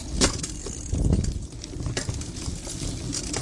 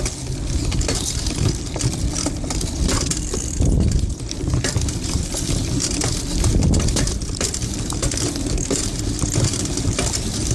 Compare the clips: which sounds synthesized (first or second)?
second